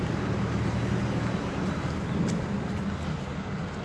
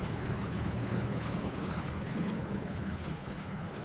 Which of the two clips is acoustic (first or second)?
first